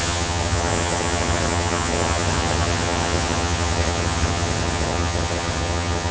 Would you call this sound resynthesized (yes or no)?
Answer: yes